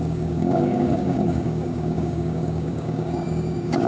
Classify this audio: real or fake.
fake